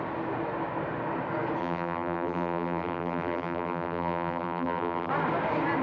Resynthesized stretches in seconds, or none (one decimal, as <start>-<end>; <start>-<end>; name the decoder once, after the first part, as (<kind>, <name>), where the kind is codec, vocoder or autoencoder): 1.6-5.1 (vocoder, BigVGAN v2)